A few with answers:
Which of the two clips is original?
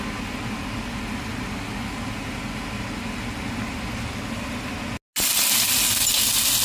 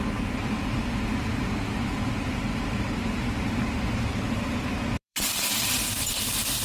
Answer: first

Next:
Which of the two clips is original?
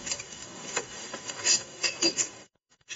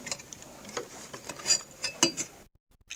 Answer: second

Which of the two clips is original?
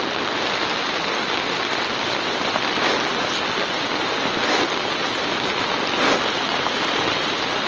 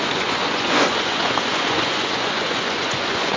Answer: first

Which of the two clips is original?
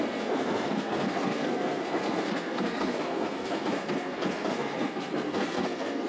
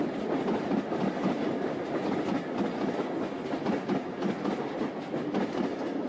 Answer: second